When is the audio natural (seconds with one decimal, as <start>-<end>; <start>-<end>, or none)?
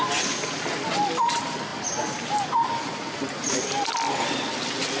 0.0-5.0